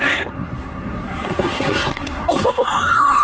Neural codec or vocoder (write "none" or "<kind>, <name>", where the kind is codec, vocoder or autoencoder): codec, SNAC